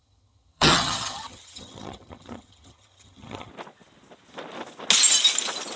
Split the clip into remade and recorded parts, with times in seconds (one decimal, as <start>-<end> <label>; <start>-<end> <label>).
0.0-3.5 remade; 3.5-5.8 recorded

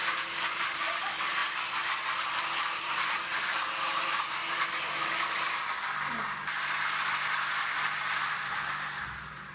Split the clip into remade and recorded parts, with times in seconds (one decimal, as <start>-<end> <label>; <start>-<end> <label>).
0.0-0.6 recorded; 0.6-1.4 remade; 1.4-2.6 recorded; 2.6-4.4 remade; 4.4-7.6 recorded; 7.6-9.5 remade